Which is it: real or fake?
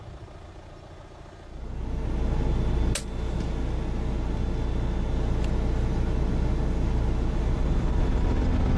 real